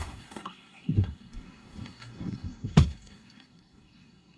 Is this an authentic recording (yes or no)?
no